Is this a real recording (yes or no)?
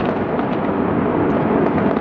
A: yes